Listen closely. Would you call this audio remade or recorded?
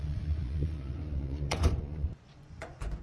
remade